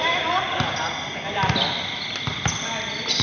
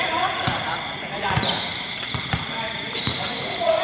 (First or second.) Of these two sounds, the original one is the first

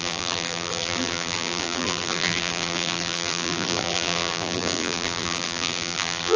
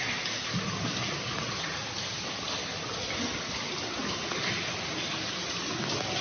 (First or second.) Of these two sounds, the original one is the second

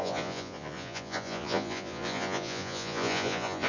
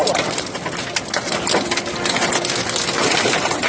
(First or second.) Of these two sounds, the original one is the second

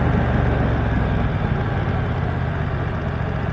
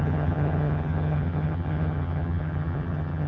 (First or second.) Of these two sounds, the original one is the first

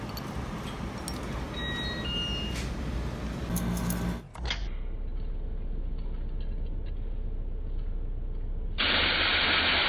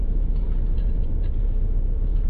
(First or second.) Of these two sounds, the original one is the first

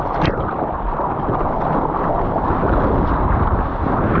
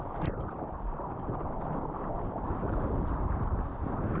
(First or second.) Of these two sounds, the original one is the first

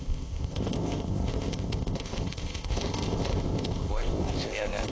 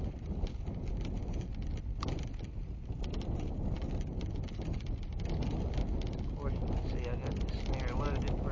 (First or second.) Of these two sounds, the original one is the second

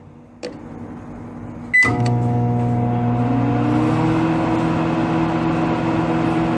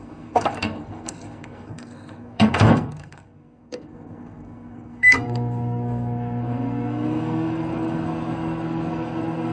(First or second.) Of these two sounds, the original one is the first